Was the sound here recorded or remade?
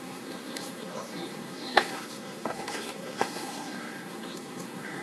remade